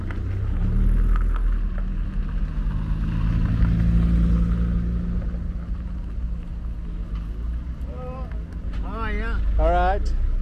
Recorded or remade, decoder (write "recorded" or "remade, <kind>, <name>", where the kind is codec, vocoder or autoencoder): recorded